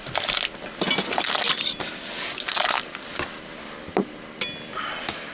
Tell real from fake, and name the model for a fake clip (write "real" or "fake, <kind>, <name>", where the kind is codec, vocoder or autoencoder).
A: real